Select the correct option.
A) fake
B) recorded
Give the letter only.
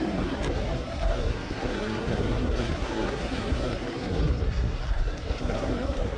A